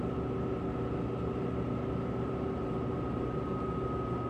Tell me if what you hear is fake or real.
real